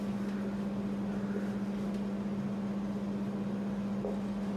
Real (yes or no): yes